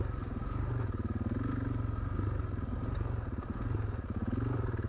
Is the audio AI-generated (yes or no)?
no